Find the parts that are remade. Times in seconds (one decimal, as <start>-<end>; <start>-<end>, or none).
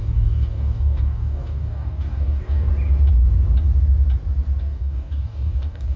0.0-2.7; 4.6-6.0